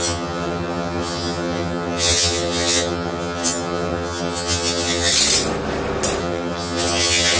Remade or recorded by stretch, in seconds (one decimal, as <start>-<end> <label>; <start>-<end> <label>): 0.0-5.1 remade; 5.1-6.2 recorded; 6.2-7.4 remade